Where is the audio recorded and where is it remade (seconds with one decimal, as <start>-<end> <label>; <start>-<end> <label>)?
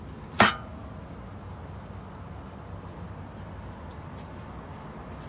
0.0-5.3 recorded